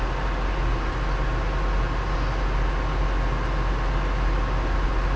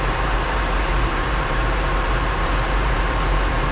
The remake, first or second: second